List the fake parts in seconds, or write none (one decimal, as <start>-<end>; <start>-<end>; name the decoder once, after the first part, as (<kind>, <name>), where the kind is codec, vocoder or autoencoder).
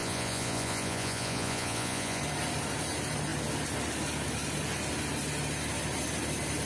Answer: 0.0-2.2 (vocoder, Vocos)